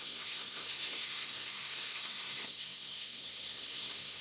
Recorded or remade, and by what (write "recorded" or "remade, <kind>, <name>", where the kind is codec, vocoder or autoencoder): remade, codec, SNAC